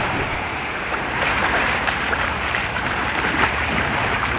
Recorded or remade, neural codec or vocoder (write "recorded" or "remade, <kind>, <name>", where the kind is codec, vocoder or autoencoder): remade, vocoder, BigVGAN v2